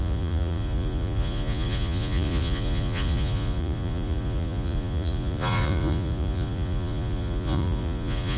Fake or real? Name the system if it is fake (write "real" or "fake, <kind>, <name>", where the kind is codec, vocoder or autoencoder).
fake, vocoder, Vocos